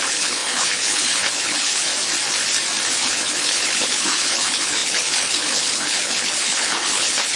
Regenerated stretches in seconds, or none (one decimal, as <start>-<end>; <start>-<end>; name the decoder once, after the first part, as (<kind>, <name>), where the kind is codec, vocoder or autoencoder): 0.0-1.9 (codec, HILCodec); 3.0-7.4